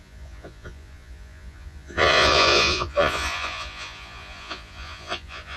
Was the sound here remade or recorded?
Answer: remade